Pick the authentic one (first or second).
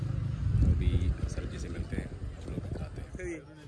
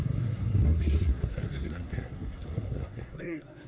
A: first